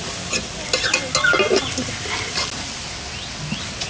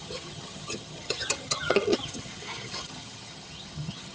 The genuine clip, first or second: first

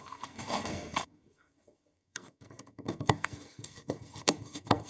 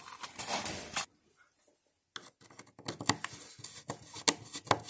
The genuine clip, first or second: second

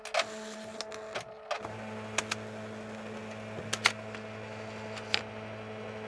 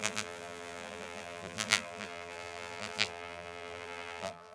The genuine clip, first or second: first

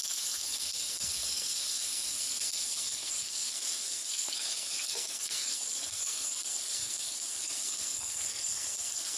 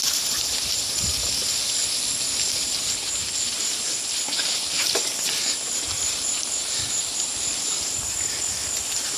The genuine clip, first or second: second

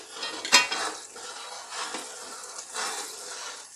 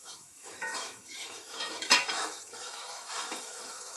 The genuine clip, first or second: first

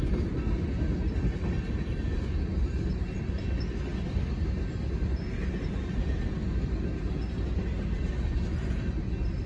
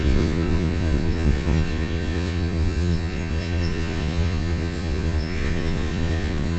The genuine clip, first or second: first